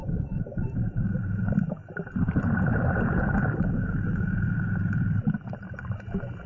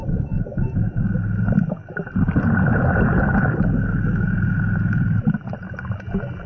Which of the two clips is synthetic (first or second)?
first